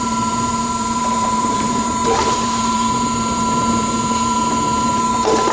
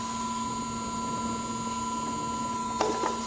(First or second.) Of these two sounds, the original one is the second